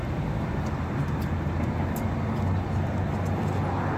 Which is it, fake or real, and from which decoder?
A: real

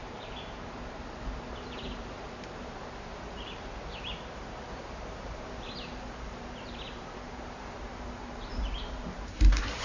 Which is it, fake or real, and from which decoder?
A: fake, vocoder, BigVGAN v2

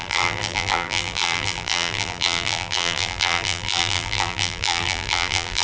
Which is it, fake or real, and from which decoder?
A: fake, vocoder, BigVGAN v2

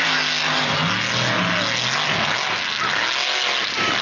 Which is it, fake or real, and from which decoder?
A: real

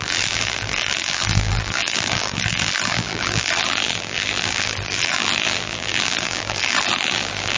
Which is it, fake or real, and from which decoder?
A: fake, vocoder, BigVGAN v2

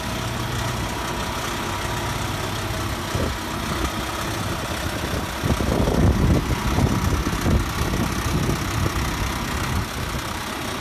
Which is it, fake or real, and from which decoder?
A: real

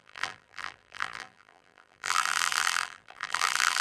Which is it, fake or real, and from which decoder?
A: fake, vocoder, BigVGAN v2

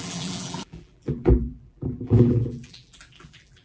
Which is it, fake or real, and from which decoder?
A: fake, vocoder, BigVGAN v2